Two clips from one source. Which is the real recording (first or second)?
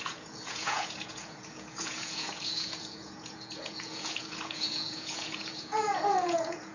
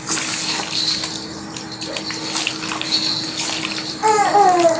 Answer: second